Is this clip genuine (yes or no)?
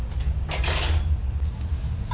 yes